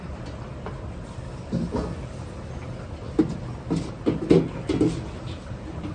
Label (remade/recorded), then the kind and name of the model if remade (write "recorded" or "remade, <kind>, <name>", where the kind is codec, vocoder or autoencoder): recorded